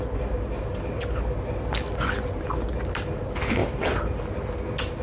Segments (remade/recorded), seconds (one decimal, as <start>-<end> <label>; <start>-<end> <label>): 0.0-0.7 recorded; 0.7-1.5 remade; 1.5-3.6 recorded; 3.6-4.2 remade; 4.2-5.0 recorded